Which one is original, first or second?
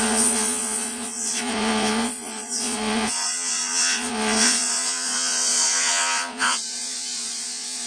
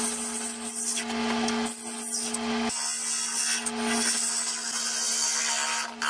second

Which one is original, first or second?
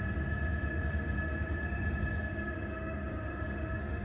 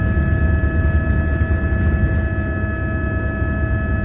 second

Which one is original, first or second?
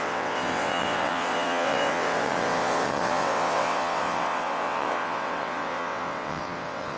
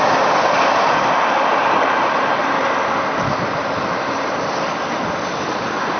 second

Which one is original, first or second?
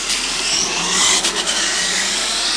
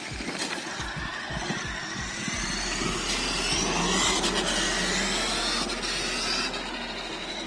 second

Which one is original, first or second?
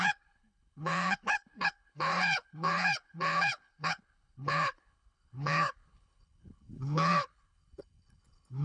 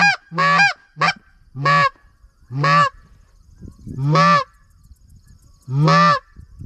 second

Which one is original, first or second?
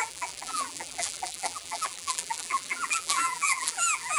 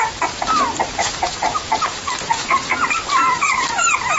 second